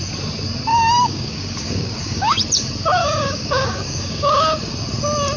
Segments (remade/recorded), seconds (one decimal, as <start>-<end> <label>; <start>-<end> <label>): 0.0-0.7 recorded; 0.7-2.4 remade; 2.4-3.0 recorded; 3.0-4.7 remade; 4.7-5.4 recorded